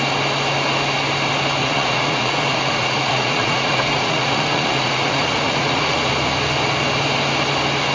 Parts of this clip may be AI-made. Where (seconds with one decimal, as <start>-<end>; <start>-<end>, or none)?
1.6-6.1